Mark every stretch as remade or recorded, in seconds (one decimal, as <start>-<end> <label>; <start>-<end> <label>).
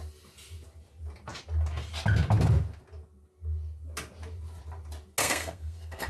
0.0-5.2 recorded; 5.2-6.1 remade